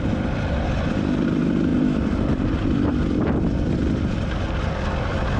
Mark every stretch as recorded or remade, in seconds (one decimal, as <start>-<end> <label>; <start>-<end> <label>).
0.0-5.4 recorded